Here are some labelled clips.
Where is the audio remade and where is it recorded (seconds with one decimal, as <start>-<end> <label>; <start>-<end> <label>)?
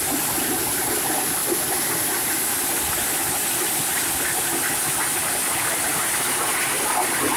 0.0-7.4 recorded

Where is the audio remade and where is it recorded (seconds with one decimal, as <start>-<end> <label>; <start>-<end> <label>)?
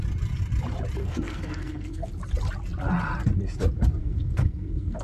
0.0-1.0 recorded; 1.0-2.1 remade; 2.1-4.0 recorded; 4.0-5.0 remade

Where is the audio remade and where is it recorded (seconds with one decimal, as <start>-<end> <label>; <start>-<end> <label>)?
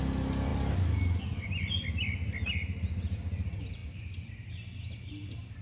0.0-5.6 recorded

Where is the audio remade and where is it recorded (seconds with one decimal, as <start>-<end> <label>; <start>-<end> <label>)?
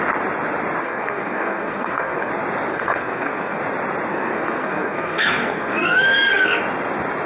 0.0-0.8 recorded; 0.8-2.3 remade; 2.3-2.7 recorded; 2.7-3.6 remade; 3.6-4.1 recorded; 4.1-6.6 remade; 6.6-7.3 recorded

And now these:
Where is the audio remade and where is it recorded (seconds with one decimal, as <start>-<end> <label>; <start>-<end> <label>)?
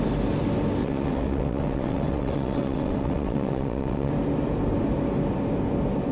0.0-0.8 recorded; 0.8-4.1 remade; 4.1-6.1 recorded